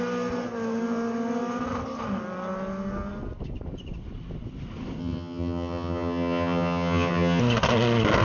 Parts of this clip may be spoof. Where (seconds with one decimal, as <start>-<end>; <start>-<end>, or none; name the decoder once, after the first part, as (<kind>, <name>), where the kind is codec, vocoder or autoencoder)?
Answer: 5.0-7.4 (vocoder, HiFi-GAN)